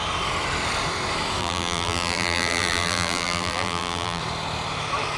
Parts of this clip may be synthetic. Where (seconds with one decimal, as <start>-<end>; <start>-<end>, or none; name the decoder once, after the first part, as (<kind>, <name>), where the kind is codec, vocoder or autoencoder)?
1.4-4.2 (vocoder, BigVGAN v2)